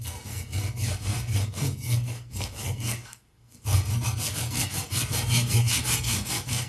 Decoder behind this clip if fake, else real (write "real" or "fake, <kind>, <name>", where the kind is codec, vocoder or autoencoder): fake, codec, SNAC